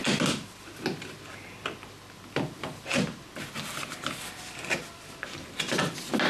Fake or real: real